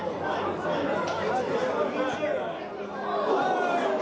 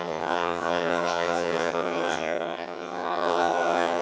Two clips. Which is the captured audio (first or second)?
first